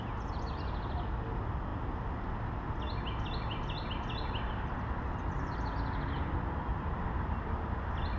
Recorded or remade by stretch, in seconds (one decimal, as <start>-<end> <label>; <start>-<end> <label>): 0.0-8.2 recorded